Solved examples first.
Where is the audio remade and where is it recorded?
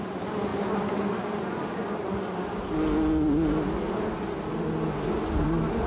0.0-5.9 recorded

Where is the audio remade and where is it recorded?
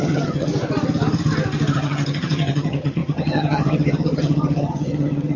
0.0-0.5 remade; 0.5-1.7 recorded; 1.7-5.4 remade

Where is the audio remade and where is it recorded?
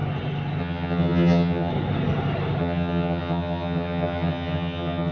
0.0-0.6 recorded; 0.6-1.7 remade; 1.7-2.6 recorded; 2.6-5.1 remade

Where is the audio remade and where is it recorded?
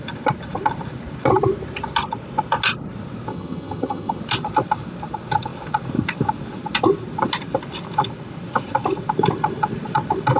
0.0-3.3 recorded; 3.3-4.2 remade; 4.2-10.4 recorded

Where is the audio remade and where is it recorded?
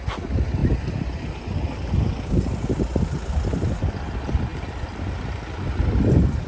0.0-6.5 recorded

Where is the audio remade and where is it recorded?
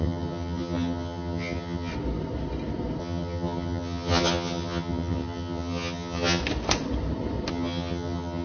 0.0-1.9 remade; 1.9-3.0 recorded; 3.0-6.4 remade; 6.4-7.5 recorded; 7.5-8.4 remade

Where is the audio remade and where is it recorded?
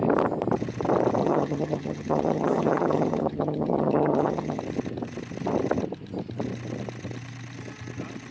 0.0-1.2 recorded; 1.2-4.6 remade; 4.6-8.3 recorded